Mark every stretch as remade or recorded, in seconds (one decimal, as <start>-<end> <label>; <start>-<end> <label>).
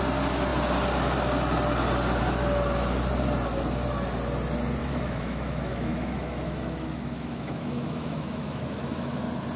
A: 0.0-4.8 recorded; 4.8-9.2 remade; 9.2-9.6 recorded